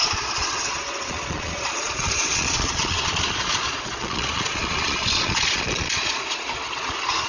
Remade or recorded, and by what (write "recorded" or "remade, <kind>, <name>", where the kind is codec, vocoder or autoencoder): remade, vocoder, Vocos